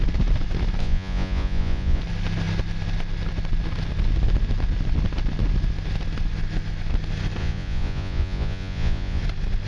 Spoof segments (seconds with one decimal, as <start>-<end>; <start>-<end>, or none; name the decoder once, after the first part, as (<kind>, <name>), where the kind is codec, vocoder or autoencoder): 0.8-2.0 (vocoder, Vocos); 7.4-9.2